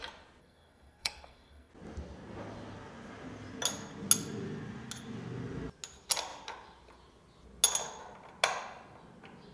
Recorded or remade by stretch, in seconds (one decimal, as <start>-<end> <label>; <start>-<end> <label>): 0.0-0.4 recorded; 0.4-1.7 remade; 1.7-9.5 recorded